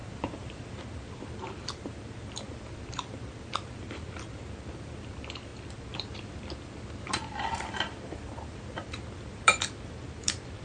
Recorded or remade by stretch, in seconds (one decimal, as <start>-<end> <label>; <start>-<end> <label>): 0.0-10.6 remade